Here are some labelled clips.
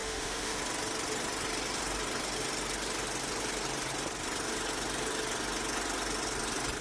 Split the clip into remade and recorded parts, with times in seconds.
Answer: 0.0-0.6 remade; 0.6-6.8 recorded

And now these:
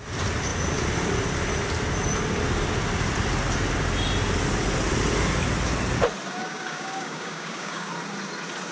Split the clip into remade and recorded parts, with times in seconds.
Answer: 0.0-6.4 recorded; 6.4-7.9 remade; 7.9-8.7 recorded

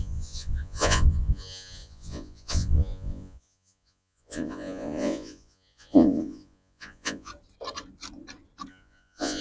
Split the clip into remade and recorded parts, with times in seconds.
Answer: 0.0-7.3 remade; 7.3-8.7 recorded; 8.7-9.4 remade

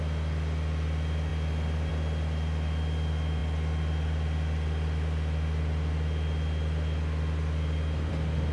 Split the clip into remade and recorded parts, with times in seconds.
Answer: 0.0-8.5 recorded

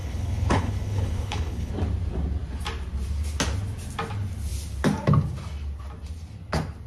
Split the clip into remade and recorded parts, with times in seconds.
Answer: 0.0-1.7 remade; 1.7-6.9 recorded

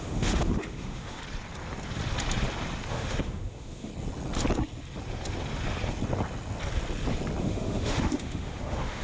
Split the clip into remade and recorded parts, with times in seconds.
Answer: 0.0-1.2 remade; 1.2-2.9 recorded; 2.9-3.9 remade; 3.9-7.4 recorded; 7.4-9.0 remade

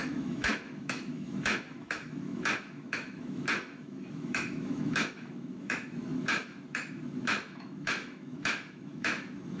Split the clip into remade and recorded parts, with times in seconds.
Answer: 0.0-9.6 remade